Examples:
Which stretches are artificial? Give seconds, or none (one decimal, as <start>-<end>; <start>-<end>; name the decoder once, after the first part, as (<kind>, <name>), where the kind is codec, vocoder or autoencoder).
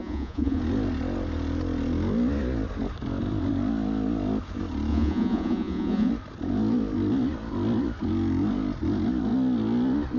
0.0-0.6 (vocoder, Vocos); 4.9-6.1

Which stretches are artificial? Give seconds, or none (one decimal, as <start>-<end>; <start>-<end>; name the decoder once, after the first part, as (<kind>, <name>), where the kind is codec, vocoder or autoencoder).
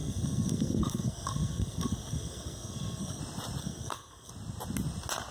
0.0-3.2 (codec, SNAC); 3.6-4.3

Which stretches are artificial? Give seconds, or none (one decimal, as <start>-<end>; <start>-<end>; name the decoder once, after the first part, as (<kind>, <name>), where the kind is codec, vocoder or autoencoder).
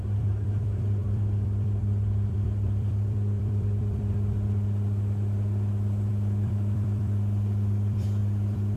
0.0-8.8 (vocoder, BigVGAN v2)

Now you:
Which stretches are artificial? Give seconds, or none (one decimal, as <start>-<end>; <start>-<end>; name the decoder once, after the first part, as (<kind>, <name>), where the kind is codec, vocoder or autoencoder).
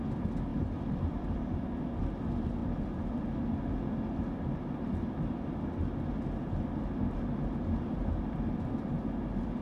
0.5-1.4 (vocoder, BigVGAN v2); 2.6-3.2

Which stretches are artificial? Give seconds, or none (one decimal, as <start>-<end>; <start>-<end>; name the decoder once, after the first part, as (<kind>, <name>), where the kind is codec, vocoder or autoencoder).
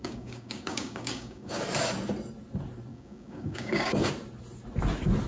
0.0-1.6 (codec, DAC); 2.9-4.1